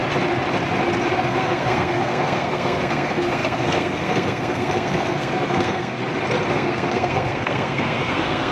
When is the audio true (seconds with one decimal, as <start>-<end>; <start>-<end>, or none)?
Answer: 0.0-1.2; 6.0-6.5